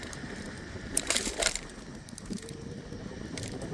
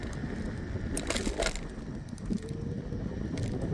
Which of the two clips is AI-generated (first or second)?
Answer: first